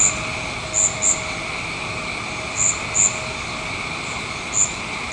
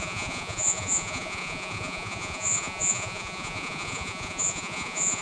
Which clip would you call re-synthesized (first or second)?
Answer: second